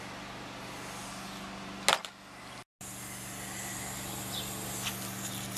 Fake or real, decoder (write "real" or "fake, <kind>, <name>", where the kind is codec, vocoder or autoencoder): real